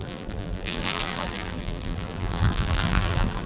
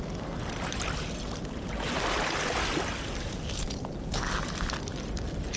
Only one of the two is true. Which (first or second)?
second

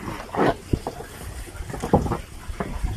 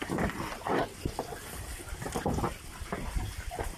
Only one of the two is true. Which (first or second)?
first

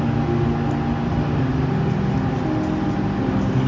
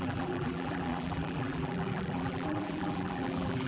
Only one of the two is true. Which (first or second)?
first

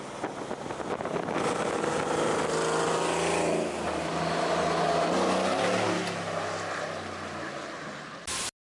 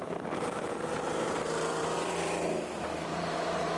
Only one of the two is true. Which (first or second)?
first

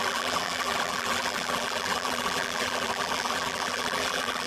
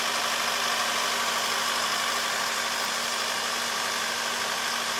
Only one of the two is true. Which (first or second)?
second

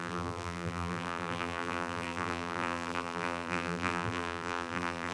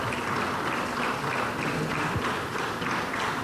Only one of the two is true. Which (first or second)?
second